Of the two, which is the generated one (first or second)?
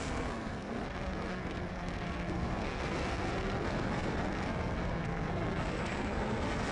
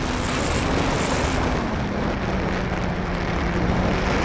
first